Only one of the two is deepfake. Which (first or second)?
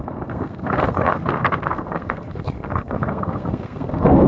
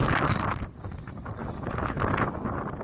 first